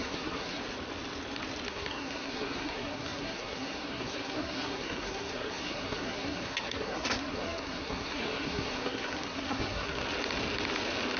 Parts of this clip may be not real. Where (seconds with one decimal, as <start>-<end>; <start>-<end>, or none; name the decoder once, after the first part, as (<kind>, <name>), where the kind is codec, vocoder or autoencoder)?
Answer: 0.0-0.6 (codec, SNAC); 1.7-10.0